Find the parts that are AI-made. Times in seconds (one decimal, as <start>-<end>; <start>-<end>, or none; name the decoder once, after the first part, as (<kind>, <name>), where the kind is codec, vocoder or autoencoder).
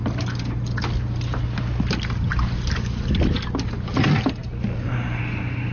none